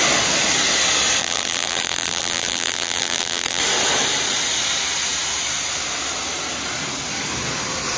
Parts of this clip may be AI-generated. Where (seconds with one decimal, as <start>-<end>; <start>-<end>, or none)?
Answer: 1.2-3.6

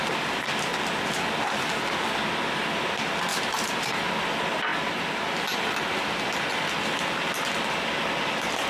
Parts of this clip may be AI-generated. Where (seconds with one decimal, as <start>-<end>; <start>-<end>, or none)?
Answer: 3.3-4.1; 4.7-5.4

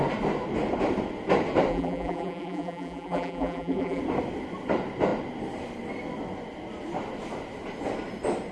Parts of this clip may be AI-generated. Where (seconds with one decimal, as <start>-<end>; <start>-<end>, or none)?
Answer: 1.7-4.0

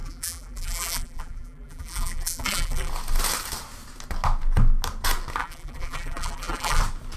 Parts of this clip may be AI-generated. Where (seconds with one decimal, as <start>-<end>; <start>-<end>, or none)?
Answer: 0.0-2.9; 5.4-6.8